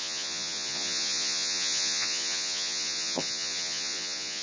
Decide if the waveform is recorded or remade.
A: remade